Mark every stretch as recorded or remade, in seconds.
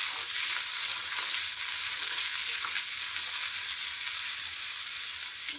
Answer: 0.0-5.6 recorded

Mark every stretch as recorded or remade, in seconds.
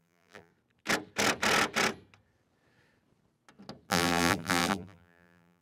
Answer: 0.0-0.5 remade; 0.5-3.9 recorded; 3.9-5.6 remade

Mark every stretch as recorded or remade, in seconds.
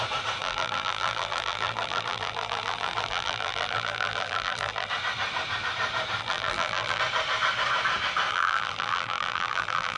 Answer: 0.0-0.4 recorded; 0.4-4.9 remade; 4.9-6.2 recorded; 6.2-7.0 remade; 7.0-8.3 recorded; 8.3-10.0 remade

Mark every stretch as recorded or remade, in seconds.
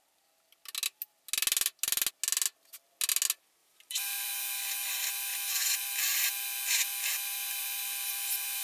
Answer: 0.0-3.6 recorded; 3.6-4.3 remade; 4.3-5.3 recorded; 5.3-5.8 remade; 5.8-8.6 recorded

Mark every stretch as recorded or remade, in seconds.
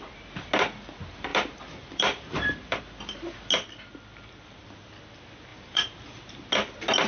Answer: 0.0-1.3 recorded; 1.3-2.8 remade; 2.8-5.5 recorded; 5.5-6.2 remade; 6.2-7.1 recorded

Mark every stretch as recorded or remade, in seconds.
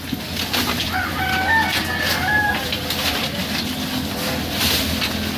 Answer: 0.0-5.4 recorded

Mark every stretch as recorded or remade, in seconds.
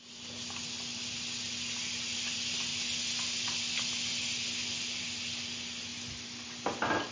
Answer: 0.0-7.1 recorded